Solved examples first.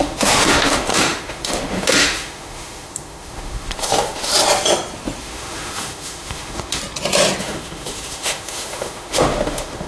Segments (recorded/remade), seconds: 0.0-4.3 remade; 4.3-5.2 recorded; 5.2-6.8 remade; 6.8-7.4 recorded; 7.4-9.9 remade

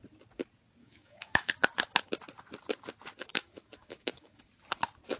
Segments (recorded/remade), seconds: 0.0-0.8 recorded; 0.8-1.5 remade; 1.5-3.3 recorded; 3.3-4.4 remade; 4.4-5.2 recorded